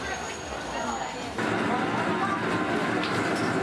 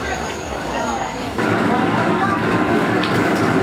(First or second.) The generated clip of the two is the second